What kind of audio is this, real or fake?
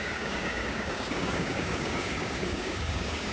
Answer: fake